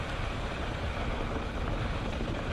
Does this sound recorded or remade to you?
recorded